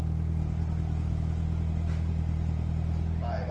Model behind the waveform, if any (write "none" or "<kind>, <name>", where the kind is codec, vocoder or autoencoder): none